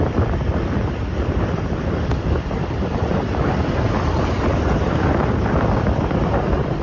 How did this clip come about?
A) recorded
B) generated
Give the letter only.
B